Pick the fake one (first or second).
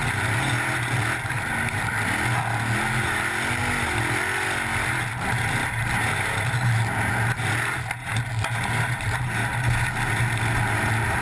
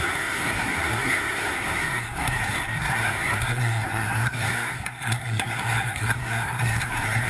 second